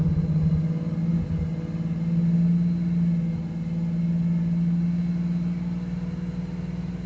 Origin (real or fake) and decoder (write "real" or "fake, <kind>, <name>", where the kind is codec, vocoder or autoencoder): real